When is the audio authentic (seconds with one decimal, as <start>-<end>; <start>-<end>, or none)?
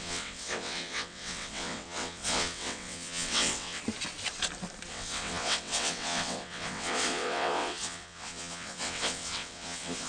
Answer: 3.8-4.9